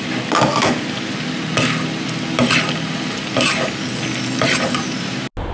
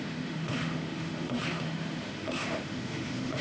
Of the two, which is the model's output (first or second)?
second